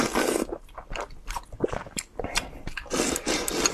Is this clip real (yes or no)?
yes